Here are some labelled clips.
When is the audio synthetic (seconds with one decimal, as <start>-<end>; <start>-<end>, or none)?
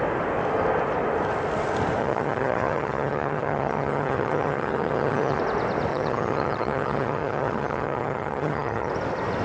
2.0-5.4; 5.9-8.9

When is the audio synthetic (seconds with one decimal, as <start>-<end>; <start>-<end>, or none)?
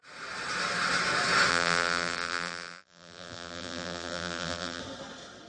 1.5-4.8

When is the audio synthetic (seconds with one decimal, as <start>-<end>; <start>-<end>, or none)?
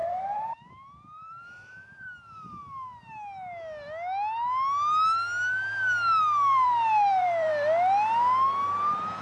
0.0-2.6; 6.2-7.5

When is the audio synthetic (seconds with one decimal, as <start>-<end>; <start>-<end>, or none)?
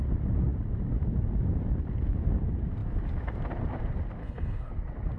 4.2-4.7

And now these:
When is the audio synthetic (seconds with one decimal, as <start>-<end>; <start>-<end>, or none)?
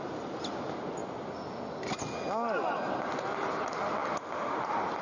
none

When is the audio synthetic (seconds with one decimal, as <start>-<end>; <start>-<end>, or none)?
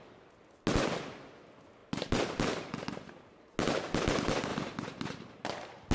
4.5-5.9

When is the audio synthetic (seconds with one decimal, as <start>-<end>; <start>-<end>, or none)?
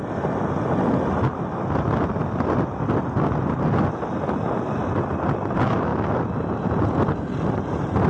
none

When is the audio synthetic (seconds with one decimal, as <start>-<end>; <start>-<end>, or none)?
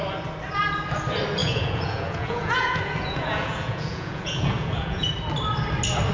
1.4-5.1